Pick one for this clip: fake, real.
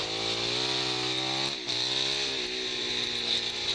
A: real